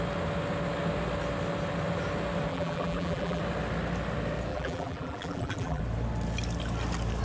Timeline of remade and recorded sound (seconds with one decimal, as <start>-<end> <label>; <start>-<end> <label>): 0.0-2.5 recorded; 2.5-3.4 remade; 3.4-4.5 recorded; 4.5-5.8 remade; 5.8-7.2 recorded